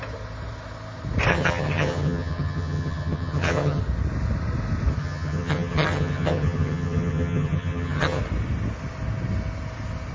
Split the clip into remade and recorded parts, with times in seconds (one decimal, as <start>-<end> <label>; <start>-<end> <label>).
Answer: 0.0-1.3 recorded; 1.3-3.8 remade; 3.8-5.0 recorded; 5.0-8.2 remade; 8.2-10.1 recorded